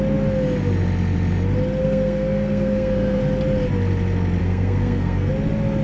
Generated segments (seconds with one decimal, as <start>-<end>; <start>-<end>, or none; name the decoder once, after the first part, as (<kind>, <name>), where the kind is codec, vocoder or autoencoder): 1.8-3.2 (codec, SNAC); 4.4-5.3